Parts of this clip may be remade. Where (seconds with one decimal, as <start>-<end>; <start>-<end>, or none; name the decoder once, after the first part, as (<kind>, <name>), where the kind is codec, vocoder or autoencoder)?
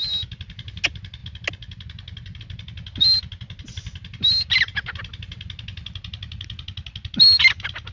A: none